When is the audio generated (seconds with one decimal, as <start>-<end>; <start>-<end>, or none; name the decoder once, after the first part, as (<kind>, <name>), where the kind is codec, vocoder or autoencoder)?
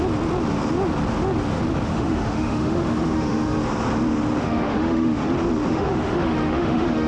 1.9-3.6 (autoencoder, DAC-VAE); 4.4-5.3; 5.7-7.1